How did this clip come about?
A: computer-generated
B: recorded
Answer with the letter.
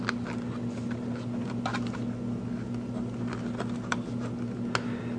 B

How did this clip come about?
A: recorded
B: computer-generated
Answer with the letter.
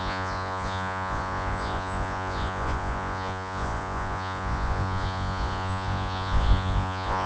B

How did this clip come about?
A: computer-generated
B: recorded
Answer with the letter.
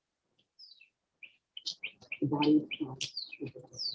B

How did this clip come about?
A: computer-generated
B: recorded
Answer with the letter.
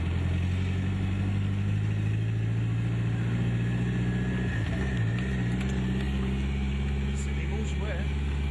B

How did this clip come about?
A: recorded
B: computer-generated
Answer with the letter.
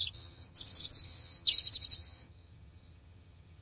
B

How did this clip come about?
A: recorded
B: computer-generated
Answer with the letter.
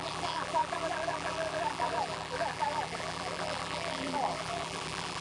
B